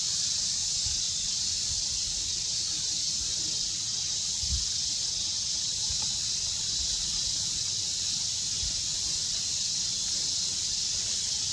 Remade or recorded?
recorded